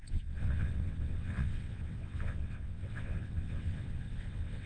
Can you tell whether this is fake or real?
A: fake